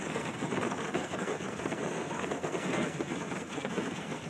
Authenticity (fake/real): fake